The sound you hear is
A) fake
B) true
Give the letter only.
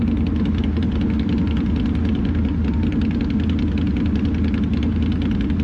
B